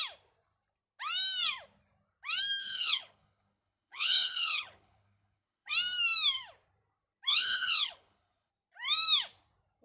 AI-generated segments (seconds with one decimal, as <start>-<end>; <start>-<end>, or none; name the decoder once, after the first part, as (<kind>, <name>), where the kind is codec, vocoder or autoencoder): 2.6-5.7 (codec, HILCodec); 7.3-8.5